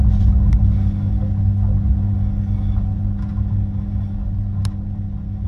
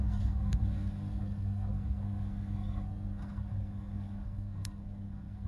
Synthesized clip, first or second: second